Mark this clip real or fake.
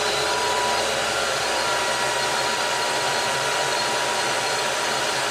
fake